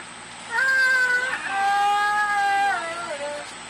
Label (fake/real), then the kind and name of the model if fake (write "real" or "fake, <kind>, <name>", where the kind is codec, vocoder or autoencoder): real